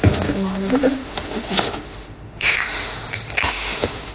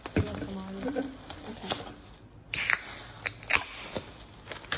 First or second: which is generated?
first